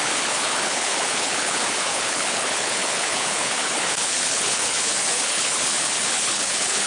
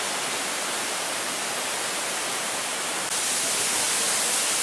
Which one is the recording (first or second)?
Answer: second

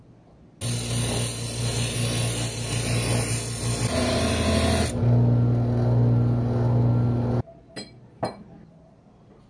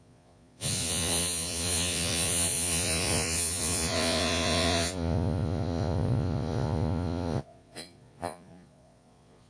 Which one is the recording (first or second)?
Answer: first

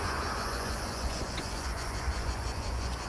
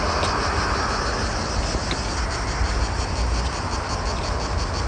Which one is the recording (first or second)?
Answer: second